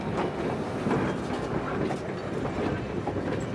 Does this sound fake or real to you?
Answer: real